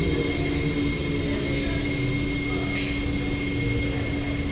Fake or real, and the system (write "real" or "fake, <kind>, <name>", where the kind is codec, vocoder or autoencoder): real